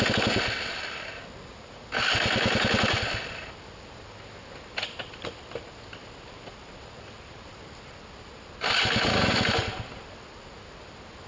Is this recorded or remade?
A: recorded